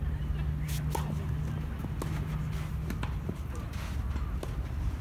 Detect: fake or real real